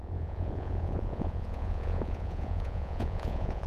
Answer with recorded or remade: remade